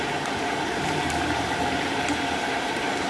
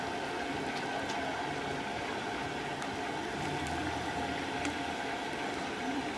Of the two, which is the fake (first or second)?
first